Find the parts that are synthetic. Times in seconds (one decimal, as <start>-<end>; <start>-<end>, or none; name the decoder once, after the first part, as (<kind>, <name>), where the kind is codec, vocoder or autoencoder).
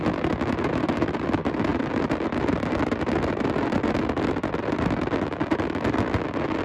1.7-5.3 (vocoder, BigVGAN v2)